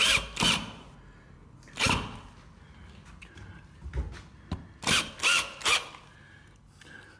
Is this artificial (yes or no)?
no